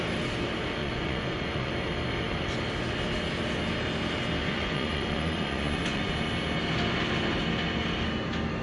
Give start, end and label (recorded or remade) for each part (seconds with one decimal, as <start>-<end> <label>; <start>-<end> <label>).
0.0-0.8 recorded; 0.8-1.7 remade; 1.7-4.4 recorded; 4.4-6.1 remade; 6.1-8.6 recorded